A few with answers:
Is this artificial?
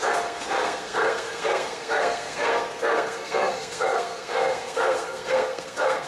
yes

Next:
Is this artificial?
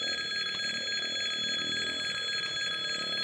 no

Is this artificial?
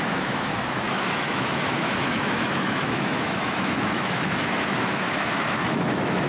yes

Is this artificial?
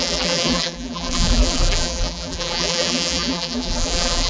yes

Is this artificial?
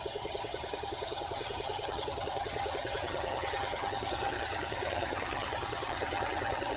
yes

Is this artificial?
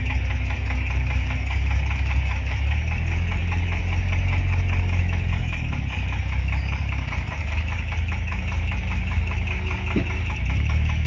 yes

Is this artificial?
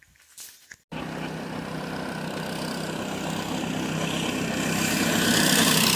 no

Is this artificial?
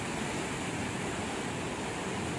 no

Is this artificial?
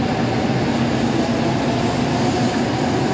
no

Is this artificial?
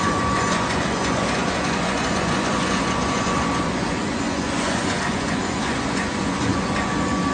yes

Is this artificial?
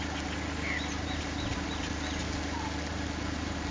no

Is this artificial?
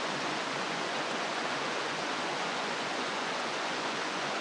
yes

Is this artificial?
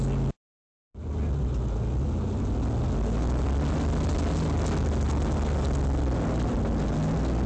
no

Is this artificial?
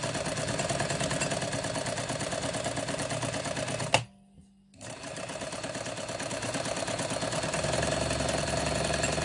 no